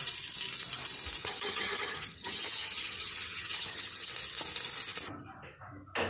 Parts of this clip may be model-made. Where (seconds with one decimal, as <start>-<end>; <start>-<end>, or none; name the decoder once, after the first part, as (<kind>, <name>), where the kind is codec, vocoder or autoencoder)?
1.2-4.1 (vocoder, HiFi-GAN)